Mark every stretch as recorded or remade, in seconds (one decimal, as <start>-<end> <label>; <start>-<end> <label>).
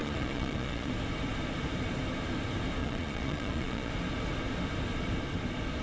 0.0-0.9 remade; 0.9-2.8 recorded; 2.8-3.9 remade; 3.9-5.8 recorded